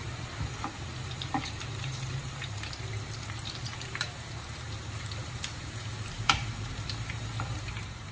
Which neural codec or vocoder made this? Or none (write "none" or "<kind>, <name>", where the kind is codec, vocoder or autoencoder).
vocoder, BigVGAN v2